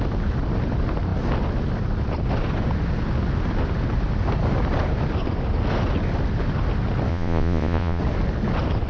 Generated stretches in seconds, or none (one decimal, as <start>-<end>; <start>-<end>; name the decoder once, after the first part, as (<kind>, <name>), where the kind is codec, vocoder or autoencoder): 7.1-8.0 (vocoder, Vocos)